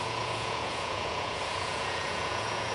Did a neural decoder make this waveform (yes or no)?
yes